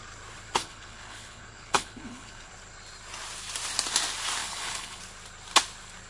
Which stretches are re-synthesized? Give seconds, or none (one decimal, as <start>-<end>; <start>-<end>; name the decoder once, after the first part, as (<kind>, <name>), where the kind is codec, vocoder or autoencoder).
0.6-2.5 (codec, HILCodec); 4.4-5.0